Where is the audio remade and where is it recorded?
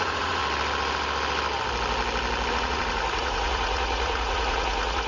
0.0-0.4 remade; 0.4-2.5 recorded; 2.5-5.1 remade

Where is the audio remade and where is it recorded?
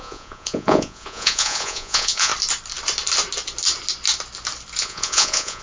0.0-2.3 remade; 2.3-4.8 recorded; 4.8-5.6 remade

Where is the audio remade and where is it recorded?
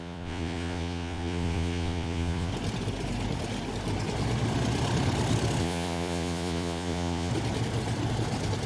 0.0-2.5 remade; 2.5-5.6 recorded; 5.6-7.3 remade; 7.3-8.7 recorded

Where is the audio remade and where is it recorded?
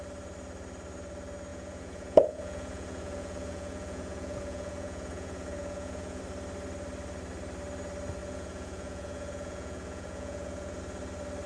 0.0-1.5 recorded; 1.5-6.2 remade; 6.2-8.2 recorded; 8.2-10.8 remade; 10.8-11.5 recorded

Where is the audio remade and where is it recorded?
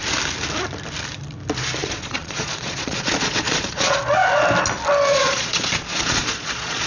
0.0-1.8 recorded; 1.8-4.0 remade; 4.0-5.1 recorded; 5.1-6.9 remade